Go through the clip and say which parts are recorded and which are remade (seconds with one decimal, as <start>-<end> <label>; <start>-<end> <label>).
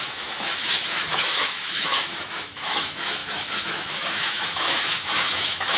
0.0-5.8 remade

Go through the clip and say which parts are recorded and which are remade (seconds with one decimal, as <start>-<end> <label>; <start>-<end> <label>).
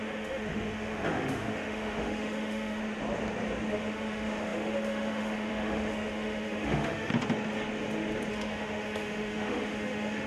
0.0-2.8 remade; 2.8-3.7 recorded; 3.7-7.1 remade; 7.1-8.3 recorded; 8.3-10.3 remade